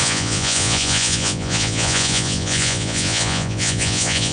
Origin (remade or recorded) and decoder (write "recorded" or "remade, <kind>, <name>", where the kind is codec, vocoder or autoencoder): remade, vocoder, Vocos